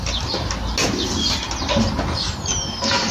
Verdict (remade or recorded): recorded